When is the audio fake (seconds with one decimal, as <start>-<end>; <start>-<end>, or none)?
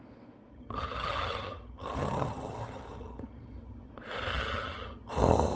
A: 0.5-3.9; 4.3-5.1